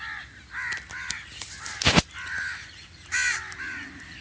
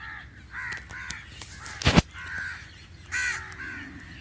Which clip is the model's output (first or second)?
first